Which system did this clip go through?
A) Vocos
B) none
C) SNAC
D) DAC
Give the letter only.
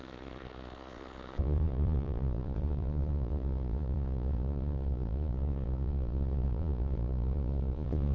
A